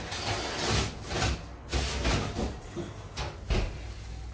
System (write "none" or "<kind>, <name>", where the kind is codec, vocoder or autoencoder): none